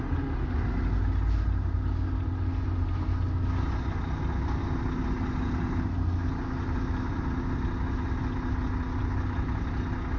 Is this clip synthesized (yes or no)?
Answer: no